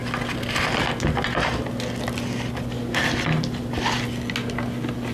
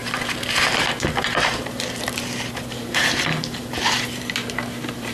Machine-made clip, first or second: second